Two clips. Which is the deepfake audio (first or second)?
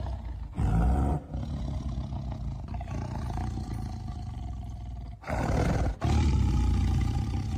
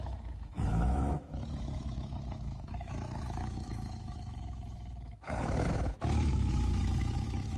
second